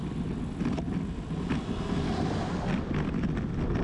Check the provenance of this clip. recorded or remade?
recorded